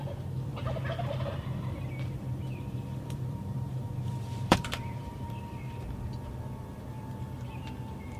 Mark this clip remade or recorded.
remade